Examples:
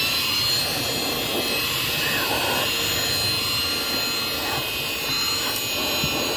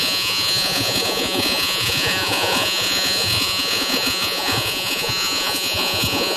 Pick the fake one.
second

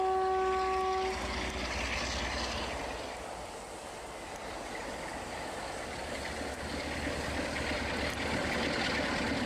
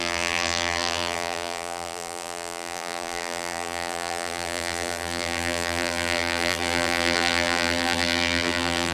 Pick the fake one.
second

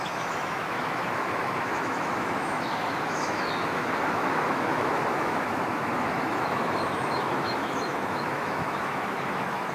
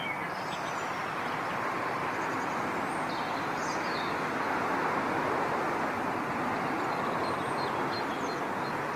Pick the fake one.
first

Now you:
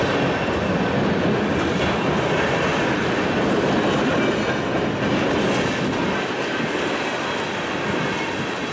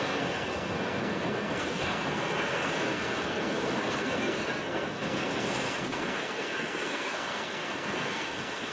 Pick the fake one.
second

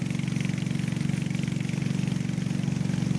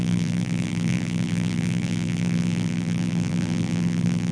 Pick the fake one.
second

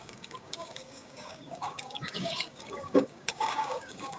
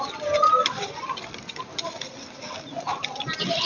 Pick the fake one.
first